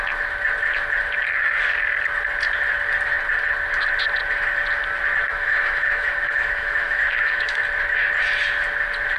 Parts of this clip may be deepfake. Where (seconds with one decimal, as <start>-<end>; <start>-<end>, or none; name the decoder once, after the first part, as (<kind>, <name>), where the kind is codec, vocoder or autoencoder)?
5.3-7.6 (autoencoder, DAC-VAE)